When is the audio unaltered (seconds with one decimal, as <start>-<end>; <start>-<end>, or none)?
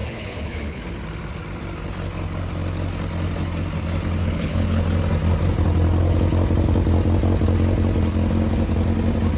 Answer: 0.8-4.2; 4.8-9.4